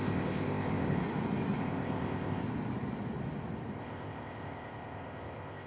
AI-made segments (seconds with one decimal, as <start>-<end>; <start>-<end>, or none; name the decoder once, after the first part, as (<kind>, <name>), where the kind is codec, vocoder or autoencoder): 0.0-1.0 (codec, ZipCodec); 1.6-2.4; 3.8-5.7